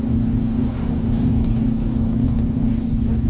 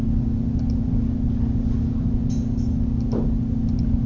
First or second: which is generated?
first